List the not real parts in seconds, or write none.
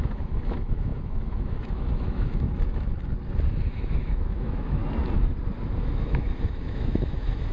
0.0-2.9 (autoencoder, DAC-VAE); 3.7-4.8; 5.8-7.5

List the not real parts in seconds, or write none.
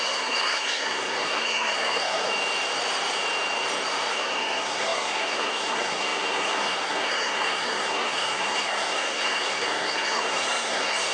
0.0-2.3 (codec, SNAC); 4.1-11.1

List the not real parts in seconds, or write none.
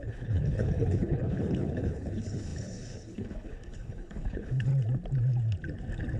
0.0-4.7 (codec, HILCodec)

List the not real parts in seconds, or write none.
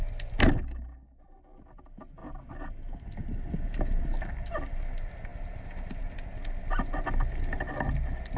none